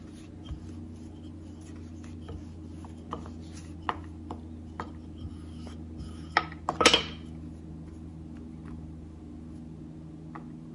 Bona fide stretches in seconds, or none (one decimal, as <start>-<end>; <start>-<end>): 0.0-10.7